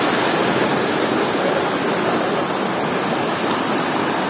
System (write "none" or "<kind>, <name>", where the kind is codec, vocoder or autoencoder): vocoder, BigVGAN v2